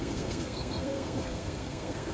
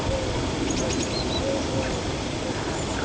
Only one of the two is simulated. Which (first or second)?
first